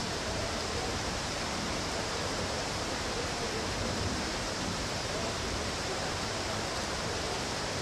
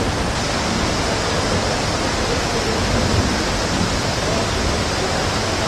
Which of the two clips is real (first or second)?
second